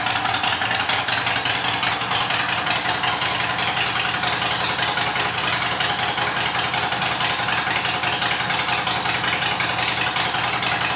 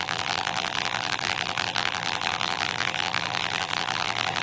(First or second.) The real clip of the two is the first